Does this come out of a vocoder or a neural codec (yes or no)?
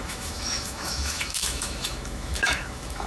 yes